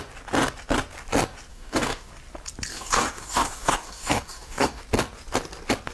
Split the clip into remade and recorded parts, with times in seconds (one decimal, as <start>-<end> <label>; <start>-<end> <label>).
0.0-1.5 recorded; 1.5-2.1 remade; 2.1-2.7 recorded; 2.7-4.8 remade; 4.8-5.9 recorded